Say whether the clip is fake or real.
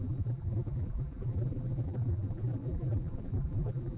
fake